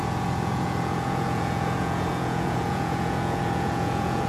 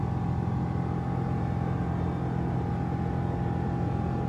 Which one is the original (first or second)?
second